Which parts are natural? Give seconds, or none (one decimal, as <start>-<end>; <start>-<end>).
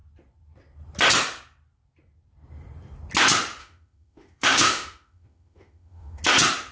0.0-3.6; 6.2-6.7